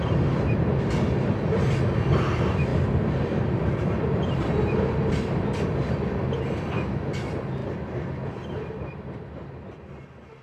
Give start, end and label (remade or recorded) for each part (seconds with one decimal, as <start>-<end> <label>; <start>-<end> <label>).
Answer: 0.0-10.4 recorded